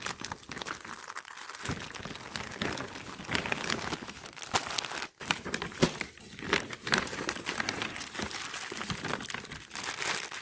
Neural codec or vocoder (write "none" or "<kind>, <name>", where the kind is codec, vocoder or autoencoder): none